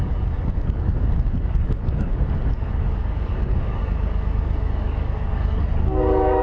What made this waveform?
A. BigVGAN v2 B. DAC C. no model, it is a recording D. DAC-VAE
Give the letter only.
B